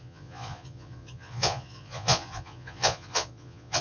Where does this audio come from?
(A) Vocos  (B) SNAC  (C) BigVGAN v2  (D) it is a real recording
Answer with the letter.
A